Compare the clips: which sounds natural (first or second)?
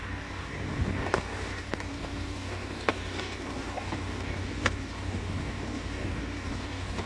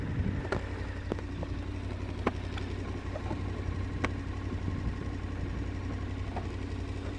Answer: second